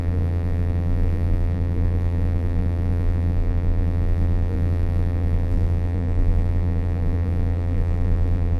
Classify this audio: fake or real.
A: fake